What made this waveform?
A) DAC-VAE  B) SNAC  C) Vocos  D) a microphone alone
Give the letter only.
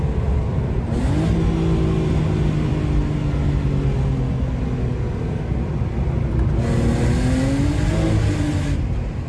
D